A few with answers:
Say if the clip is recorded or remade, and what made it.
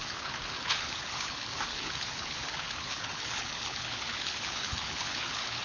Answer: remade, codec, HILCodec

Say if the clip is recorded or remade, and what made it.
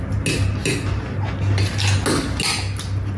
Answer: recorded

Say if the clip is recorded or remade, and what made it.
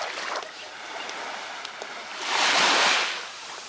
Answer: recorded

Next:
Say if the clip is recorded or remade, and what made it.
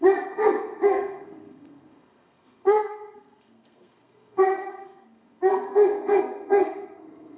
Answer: remade, codec, SNAC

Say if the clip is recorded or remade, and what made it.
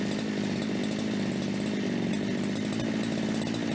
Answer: recorded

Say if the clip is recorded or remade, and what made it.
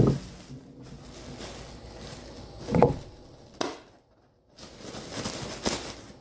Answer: recorded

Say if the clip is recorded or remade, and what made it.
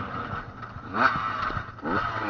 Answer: recorded